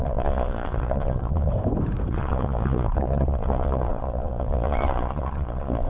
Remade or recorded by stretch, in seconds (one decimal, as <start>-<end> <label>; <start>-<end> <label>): 0.0-1.5 remade; 1.5-2.1 recorded; 2.1-5.9 remade